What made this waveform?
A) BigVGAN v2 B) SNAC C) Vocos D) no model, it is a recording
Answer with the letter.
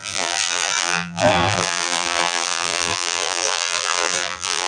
A